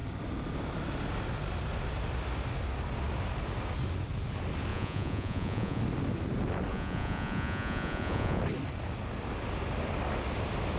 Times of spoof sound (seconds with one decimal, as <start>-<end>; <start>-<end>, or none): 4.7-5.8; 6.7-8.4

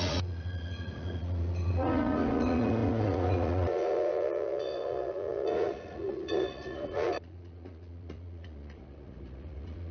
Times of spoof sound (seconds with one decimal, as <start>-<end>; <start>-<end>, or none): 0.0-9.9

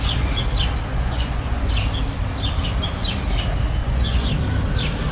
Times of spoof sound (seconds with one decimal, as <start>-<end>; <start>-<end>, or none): 0.9-1.7; 3.8-4.3